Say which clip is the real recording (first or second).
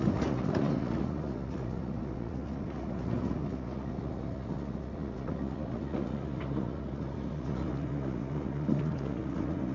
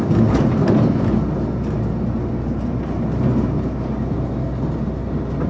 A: second